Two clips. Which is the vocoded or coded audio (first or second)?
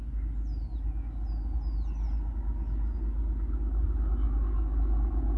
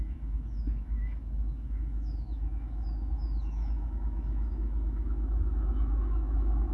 second